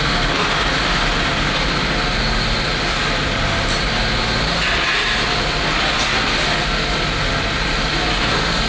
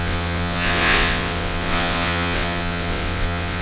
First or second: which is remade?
second